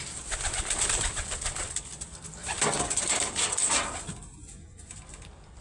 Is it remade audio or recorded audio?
recorded